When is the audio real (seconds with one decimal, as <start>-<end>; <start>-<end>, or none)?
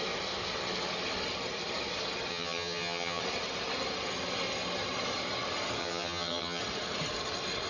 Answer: 0.0-2.3; 3.2-5.8; 6.6-7.7